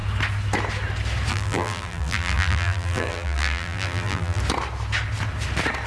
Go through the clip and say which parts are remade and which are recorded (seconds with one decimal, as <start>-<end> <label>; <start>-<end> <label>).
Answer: 0.0-1.3 recorded; 1.3-4.4 remade; 4.4-5.9 recorded